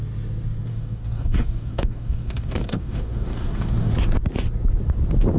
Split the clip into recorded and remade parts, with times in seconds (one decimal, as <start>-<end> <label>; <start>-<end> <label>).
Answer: 0.0-0.7 recorded; 0.7-3.9 remade; 3.9-5.4 recorded